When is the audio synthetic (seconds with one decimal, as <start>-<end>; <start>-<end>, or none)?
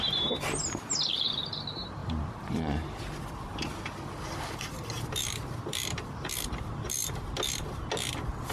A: 2.0-7.1